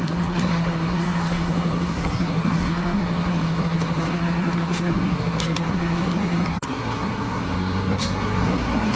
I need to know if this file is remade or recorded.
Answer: remade